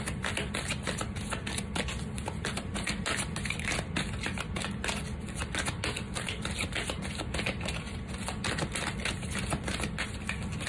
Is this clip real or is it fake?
real